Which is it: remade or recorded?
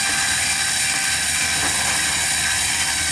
recorded